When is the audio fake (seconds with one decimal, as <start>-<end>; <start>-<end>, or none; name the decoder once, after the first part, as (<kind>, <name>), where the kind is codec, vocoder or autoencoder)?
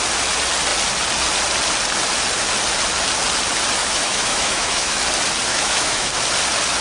3.8-5.0 (autoencoder, DAC-VAE); 5.5-6.1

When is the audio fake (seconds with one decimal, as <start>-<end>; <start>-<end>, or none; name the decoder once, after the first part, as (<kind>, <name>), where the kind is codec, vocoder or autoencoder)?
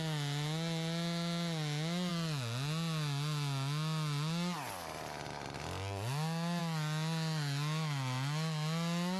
none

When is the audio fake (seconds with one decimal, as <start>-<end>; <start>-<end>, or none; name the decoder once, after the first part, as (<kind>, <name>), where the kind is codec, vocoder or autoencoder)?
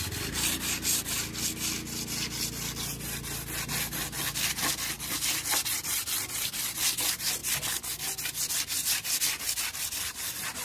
none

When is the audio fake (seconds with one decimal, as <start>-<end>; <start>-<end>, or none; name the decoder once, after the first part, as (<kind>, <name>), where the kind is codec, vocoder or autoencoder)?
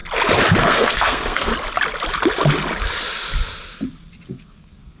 0.6-1.5 (codec, SNAC); 4.3-5.0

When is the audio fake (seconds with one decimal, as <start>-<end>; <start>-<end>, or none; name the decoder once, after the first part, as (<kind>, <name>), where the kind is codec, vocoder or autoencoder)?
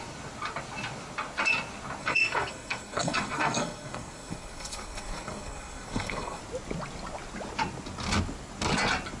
2.0-6.4 (codec, SNAC)